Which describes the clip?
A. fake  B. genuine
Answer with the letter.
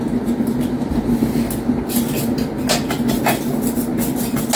B